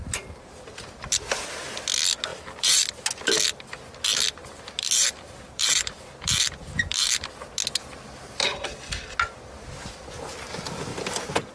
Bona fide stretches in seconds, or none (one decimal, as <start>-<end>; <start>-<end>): 0.0-2.3; 2.9-4.4; 7.3-10.9